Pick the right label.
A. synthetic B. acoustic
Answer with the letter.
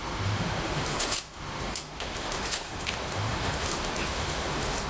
A